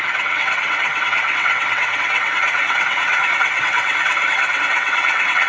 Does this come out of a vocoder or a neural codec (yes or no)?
yes